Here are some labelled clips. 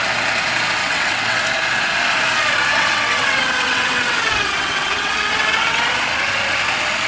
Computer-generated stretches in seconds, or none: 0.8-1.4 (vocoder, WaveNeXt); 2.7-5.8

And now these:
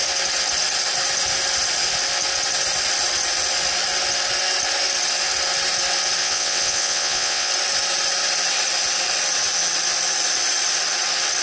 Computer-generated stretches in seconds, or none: 6.2-7.5 (vocoder, WaveNeXt)

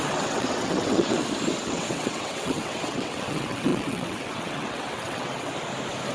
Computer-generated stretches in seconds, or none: 0.0-1.2 (vocoder, WaveNeXt); 1.7-5.5

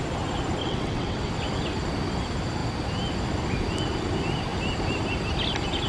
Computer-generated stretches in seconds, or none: 0.6-1.3 (vocoder, WaveNeXt)